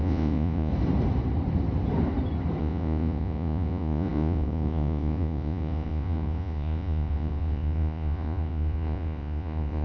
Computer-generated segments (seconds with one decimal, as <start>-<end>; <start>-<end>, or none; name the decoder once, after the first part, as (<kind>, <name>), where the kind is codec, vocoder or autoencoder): 0.0-0.7 (vocoder, Vocos); 2.6-9.8